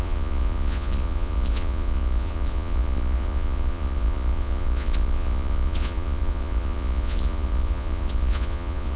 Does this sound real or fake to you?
fake